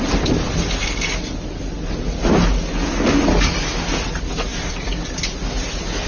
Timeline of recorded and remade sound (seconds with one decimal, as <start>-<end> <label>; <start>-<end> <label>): 0.0-6.1 recorded